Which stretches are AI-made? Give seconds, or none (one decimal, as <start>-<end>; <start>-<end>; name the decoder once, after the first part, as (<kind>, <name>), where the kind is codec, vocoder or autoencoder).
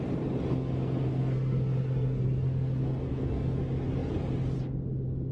0.5-3.6 (codec, SNAC)